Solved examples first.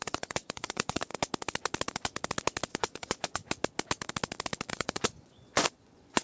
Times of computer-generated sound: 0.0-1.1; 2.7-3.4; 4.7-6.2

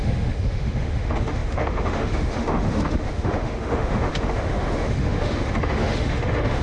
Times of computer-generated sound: 0.0-6.6

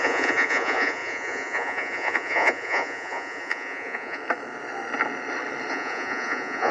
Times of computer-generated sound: 0.0-4.2; 5.7-6.7